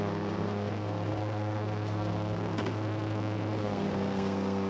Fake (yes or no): yes